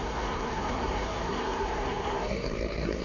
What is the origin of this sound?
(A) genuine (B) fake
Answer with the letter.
B